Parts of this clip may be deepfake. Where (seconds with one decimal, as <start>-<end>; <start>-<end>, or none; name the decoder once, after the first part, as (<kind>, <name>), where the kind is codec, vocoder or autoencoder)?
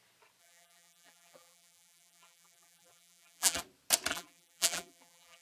0.4-3.6 (vocoder, BigVGAN v2); 4.1-5.4